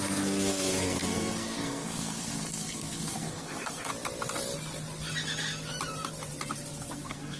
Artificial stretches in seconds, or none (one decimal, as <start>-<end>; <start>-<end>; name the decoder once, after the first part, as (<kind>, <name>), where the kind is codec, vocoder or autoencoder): 0.0-3.9 (codec, SNAC); 6.8-7.4